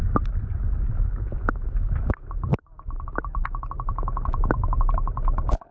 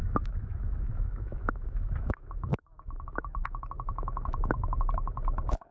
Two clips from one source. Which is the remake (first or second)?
second